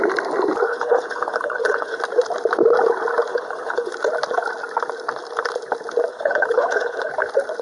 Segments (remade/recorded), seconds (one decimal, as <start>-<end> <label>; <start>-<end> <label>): 0.0-0.7 recorded; 0.7-2.0 remade; 2.0-3.3 recorded; 3.3-3.9 remade; 3.9-6.1 recorded; 6.1-7.1 remade; 7.1-7.6 recorded